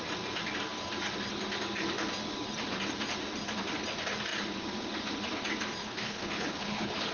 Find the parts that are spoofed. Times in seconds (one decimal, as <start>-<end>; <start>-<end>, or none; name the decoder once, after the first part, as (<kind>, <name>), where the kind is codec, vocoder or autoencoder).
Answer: 5.8-7.1 (codec, HILCodec)